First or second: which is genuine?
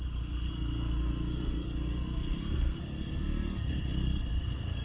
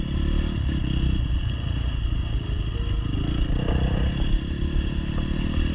second